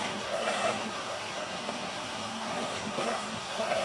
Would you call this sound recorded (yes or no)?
no